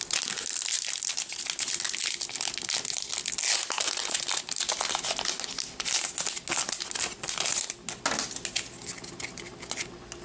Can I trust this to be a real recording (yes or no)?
yes